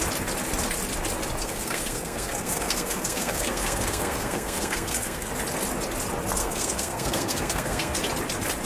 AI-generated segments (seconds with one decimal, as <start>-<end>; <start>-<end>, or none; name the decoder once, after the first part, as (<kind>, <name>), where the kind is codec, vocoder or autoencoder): 1.4-5.3 (codec, SNAC); 6.4-8.0